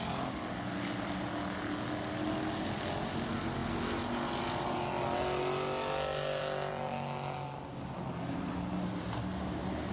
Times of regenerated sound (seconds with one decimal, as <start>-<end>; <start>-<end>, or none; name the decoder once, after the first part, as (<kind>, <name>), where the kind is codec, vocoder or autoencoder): none